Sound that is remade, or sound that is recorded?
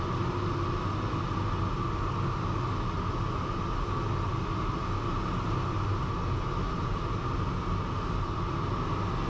recorded